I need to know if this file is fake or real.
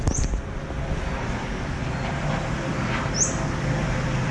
real